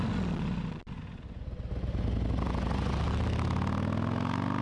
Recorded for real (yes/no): yes